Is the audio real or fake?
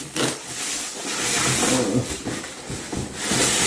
real